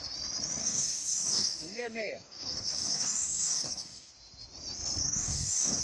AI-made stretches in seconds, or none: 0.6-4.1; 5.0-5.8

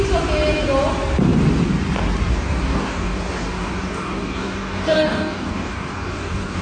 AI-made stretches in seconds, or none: 2.3-6.6

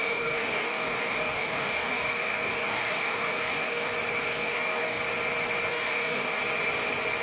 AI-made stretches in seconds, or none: 0.0-3.9; 4.3-5.0; 5.7-6.4

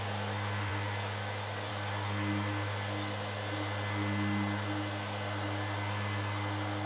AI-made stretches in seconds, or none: none

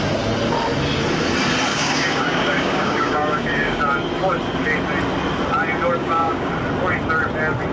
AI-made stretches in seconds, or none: 1.7-3.8; 6.0-6.5

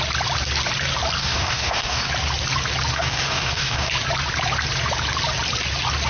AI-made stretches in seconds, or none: 1.2-2.1; 2.9-3.9

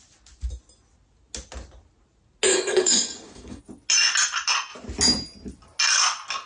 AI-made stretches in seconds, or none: 2.5-3.6